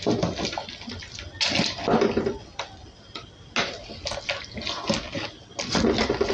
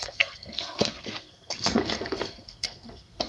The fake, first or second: second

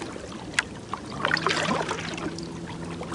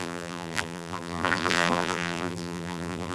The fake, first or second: second